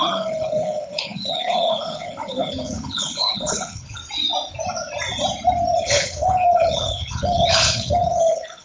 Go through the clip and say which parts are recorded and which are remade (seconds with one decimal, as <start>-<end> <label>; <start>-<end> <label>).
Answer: 0.0-4.0 remade; 4.0-5.8 recorded; 5.8-8.6 remade